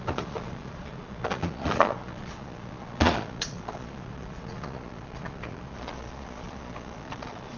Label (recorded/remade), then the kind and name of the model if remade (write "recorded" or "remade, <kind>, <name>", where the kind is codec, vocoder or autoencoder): remade, vocoder, Vocos